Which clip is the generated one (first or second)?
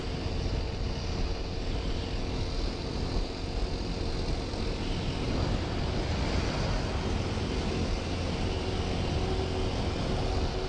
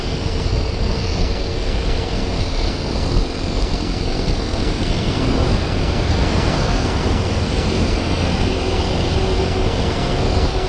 second